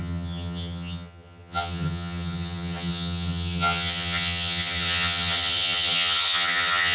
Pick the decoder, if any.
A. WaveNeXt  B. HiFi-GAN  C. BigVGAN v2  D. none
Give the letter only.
B